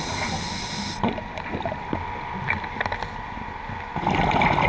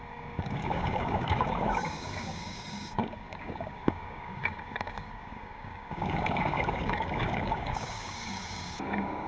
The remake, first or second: second